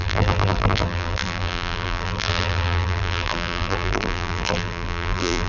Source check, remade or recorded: remade